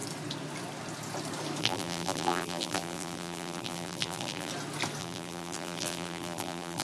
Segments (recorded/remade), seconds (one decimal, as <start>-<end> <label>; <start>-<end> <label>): 0.0-1.6 recorded; 1.6-4.5 remade; 4.5-5.0 recorded; 5.0-6.8 remade